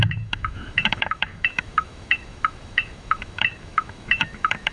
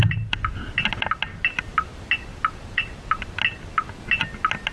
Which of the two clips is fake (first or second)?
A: first